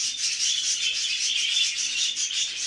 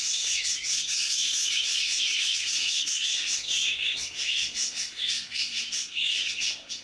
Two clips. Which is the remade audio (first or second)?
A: second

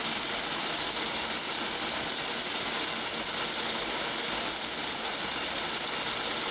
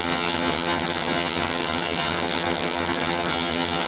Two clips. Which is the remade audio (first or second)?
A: second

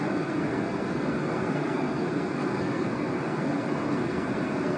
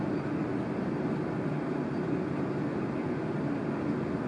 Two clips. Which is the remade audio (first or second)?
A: first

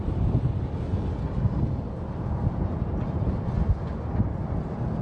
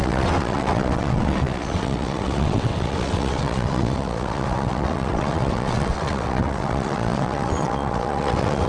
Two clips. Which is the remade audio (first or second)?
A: second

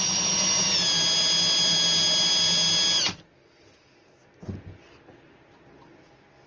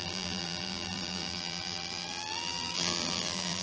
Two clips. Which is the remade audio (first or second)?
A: second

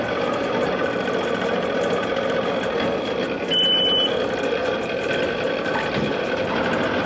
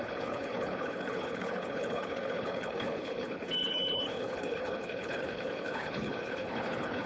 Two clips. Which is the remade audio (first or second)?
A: second